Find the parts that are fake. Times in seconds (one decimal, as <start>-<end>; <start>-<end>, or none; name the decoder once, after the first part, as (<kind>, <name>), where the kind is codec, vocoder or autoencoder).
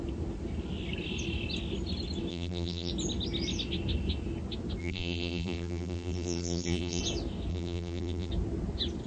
2.3-2.9 (vocoder, BigVGAN v2); 4.8-7.0; 7.5-8.3